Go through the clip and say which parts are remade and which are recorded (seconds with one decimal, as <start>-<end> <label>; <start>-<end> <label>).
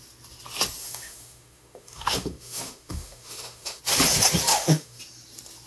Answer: 0.0-0.8 recorded; 0.8-3.8 remade; 3.8-4.5 recorded; 4.5-5.0 remade; 5.0-5.7 recorded